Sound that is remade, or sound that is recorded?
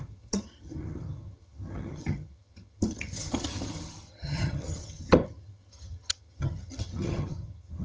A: remade